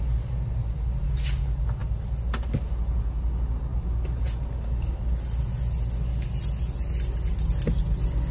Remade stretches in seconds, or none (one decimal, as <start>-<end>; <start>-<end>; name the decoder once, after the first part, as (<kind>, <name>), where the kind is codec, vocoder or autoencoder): none